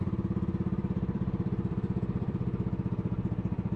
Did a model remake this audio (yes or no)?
yes